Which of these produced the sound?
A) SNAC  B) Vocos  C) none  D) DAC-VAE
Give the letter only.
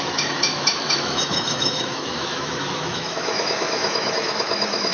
D